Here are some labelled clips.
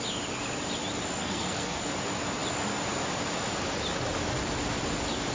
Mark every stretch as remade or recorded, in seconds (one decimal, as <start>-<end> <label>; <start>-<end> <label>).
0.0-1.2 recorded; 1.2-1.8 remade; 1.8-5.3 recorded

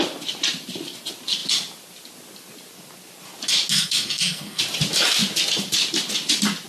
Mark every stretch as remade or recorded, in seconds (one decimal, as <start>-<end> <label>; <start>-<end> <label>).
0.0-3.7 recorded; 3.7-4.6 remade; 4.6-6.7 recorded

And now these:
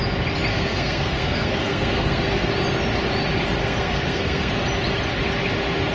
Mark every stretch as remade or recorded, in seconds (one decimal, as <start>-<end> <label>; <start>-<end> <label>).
0.0-0.5 recorded; 0.5-2.5 remade; 2.5-3.6 recorded; 3.6-4.5 remade; 4.5-5.9 recorded

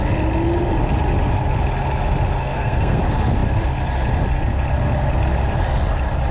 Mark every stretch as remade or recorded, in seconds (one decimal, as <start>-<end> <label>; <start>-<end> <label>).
0.0-2.4 recorded; 2.4-3.0 remade; 3.0-6.3 recorded